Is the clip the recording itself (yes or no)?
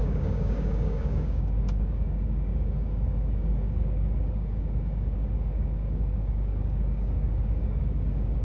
no